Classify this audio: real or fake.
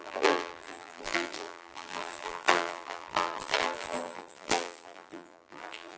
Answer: fake